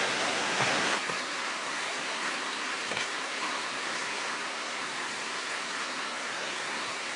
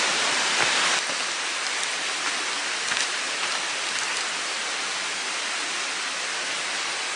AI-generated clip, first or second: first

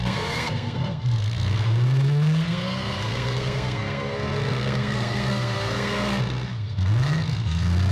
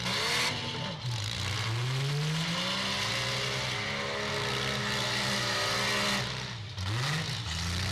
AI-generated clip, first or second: first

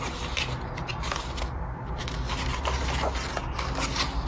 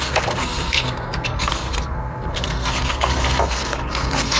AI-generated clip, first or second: second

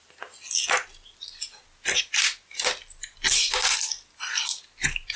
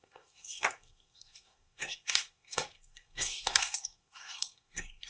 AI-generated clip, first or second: second